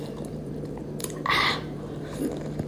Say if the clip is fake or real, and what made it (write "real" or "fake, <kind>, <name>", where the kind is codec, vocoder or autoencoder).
fake, vocoder, BigVGAN v2